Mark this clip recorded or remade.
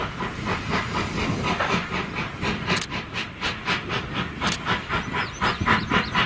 recorded